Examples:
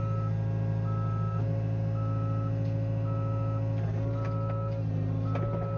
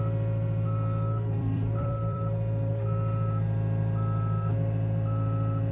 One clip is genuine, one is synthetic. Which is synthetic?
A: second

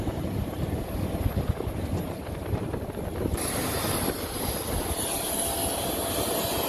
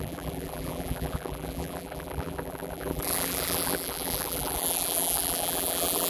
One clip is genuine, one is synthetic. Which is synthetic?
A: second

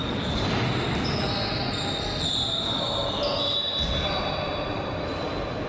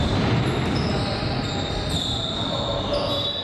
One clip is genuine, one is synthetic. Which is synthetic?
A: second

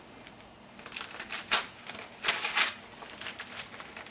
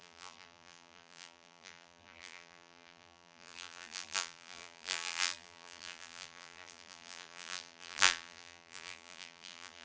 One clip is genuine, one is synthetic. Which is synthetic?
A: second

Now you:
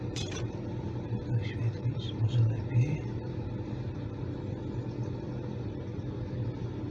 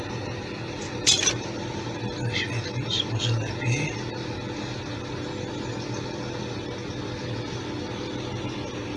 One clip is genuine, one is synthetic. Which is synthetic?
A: first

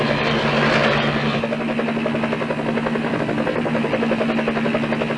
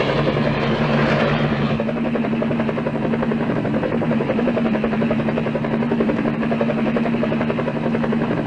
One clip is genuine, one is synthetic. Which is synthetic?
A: second